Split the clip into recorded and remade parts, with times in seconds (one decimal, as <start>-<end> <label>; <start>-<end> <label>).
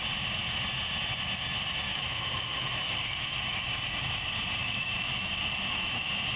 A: 0.0-1.9 recorded; 1.9-3.6 remade; 3.6-4.6 recorded; 4.6-6.0 remade; 6.0-6.4 recorded